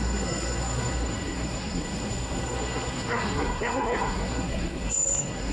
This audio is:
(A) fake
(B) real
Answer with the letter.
A